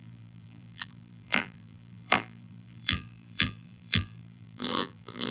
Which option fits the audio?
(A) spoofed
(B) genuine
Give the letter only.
A